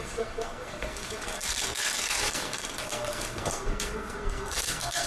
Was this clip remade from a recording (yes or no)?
yes